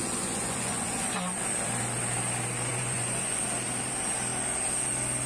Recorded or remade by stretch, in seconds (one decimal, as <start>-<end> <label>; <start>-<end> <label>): 0.0-1.1 remade; 1.1-2.7 recorded; 2.7-3.4 remade; 3.4-5.3 recorded